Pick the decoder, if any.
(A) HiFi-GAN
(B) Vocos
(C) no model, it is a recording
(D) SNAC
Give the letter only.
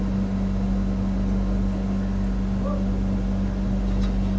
C